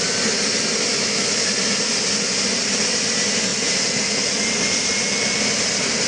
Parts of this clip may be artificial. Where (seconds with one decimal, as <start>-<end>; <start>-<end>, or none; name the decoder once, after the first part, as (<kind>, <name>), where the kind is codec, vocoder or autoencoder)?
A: 0.9-1.5 (autoencoder, DAC-VAE)